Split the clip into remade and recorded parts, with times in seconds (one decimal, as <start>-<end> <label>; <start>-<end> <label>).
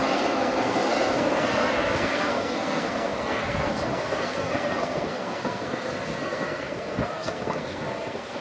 0.0-8.4 remade